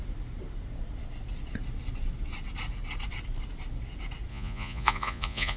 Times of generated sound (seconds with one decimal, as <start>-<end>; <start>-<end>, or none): 4.3-5.6